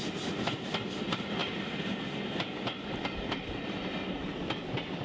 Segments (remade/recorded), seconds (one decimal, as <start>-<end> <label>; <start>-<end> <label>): 0.0-5.0 recorded